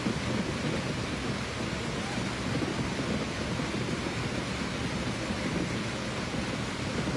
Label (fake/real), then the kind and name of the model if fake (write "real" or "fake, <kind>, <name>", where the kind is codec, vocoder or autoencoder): real